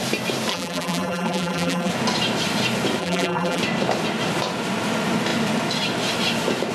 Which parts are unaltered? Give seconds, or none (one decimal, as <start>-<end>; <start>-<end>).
0.0-0.5; 1.9-3.0; 3.6-6.7